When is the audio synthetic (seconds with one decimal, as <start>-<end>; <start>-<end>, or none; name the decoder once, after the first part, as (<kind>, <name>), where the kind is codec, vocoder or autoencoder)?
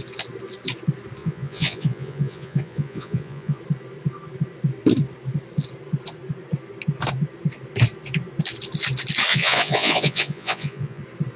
1.2-3.6 (vocoder, Vocos); 9.3-11.0